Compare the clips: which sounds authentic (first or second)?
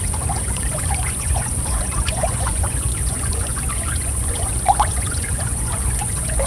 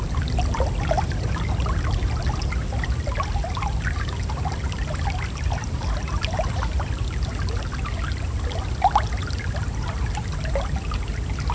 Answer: second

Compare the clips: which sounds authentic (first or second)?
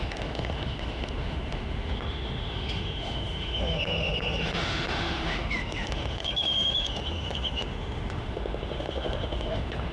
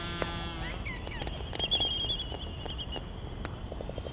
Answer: second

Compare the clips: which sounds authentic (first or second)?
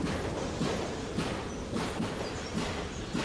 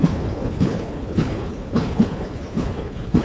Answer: first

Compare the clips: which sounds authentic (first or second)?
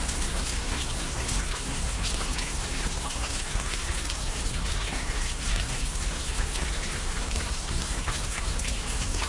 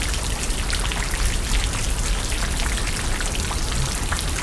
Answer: second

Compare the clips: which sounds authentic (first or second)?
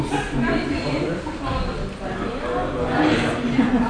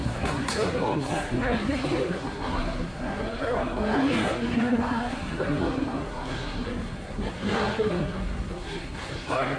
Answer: first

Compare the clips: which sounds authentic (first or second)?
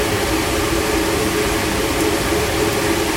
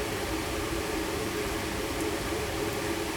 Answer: first